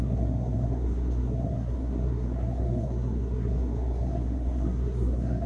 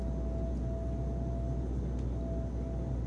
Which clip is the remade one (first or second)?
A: first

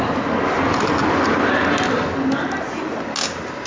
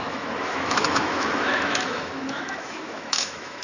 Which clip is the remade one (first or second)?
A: second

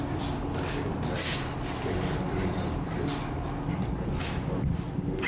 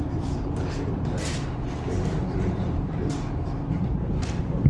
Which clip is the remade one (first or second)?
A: second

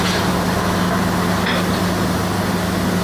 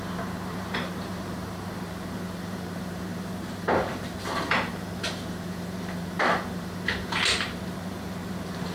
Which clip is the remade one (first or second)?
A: second